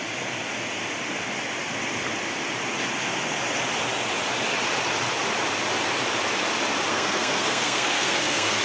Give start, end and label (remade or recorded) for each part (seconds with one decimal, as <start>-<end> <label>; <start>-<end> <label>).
0.0-6.9 recorded; 6.9-8.6 remade